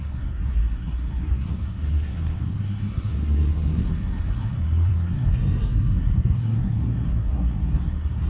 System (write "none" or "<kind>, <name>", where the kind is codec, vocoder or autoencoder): codec, SNAC